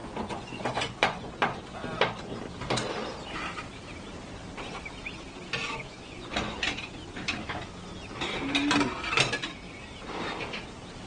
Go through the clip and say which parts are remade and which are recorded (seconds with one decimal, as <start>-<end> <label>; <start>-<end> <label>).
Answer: 0.0-1.3 remade; 1.3-5.6 recorded; 5.6-6.9 remade; 6.9-11.1 recorded